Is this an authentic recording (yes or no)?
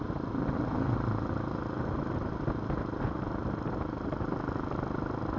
yes